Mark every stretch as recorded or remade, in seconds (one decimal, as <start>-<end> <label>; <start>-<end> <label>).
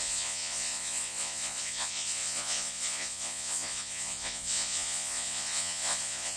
0.0-6.4 remade